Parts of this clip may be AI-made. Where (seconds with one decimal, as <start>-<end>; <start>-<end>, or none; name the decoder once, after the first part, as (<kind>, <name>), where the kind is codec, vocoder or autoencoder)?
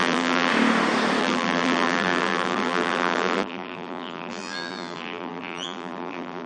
0.0-0.5 (vocoder, BigVGAN v2); 1.2-6.5